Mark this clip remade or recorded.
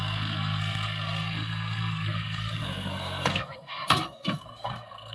remade